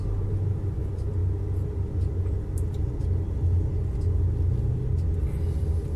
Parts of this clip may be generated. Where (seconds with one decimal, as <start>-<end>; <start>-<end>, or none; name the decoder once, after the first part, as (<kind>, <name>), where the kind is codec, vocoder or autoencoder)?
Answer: none